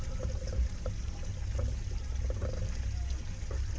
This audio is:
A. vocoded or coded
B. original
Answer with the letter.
B